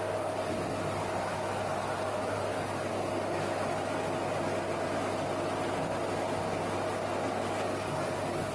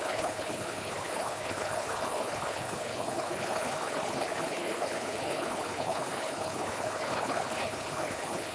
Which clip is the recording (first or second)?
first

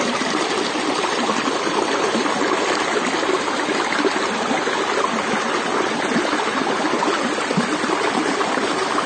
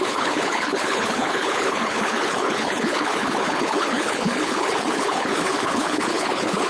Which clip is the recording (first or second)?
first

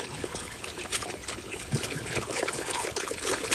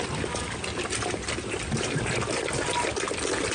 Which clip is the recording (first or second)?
second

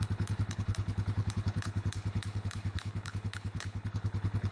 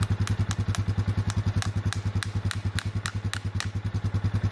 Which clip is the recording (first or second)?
second